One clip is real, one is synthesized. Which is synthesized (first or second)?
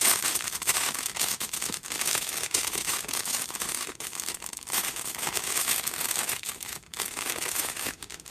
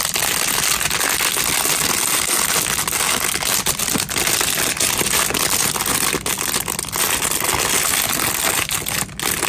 first